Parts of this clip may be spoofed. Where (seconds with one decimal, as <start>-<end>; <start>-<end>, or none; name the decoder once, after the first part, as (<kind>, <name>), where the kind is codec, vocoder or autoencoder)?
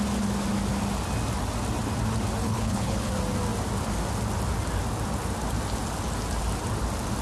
2.4-3.1 (codec, HILCodec)